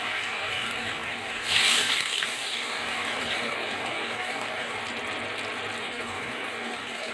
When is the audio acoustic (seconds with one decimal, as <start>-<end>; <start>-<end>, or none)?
4.8-5.8